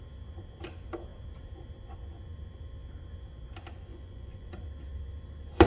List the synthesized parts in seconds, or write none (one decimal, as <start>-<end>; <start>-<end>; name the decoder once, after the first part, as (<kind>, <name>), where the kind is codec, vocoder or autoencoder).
3.9-4.5 (vocoder, Vocos)